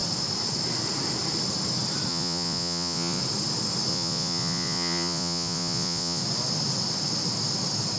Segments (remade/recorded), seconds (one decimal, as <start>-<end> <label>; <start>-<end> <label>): 0.0-2.1 recorded; 2.1-3.2 remade; 3.2-3.9 recorded; 3.9-6.2 remade; 6.2-8.0 recorded

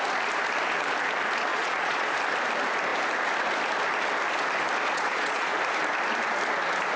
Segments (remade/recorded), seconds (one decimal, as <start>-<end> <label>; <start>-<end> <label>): 0.0-1.5 recorded; 1.5-2.1 remade; 2.1-4.9 recorded; 4.9-5.5 remade; 5.5-7.0 recorded

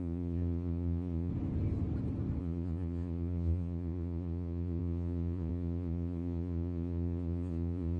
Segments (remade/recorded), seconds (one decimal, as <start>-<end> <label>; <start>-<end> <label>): 0.0-1.3 remade; 1.3-2.4 recorded; 2.4-8.0 remade

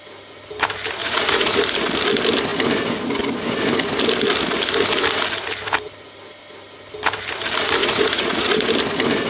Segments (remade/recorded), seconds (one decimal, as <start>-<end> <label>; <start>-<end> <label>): 0.0-1.0 recorded; 1.0-1.6 remade; 1.6-7.8 recorded; 7.8-8.7 remade; 8.7-9.3 recorded

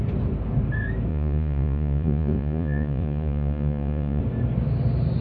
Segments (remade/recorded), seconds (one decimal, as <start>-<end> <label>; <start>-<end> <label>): 0.0-1.1 recorded; 1.1-4.2 remade; 4.2-5.2 recorded

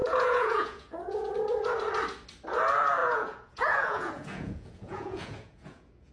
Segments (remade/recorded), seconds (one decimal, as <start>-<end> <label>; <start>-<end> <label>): 0.0-1.3 remade; 1.3-3.0 recorded; 3.0-6.1 remade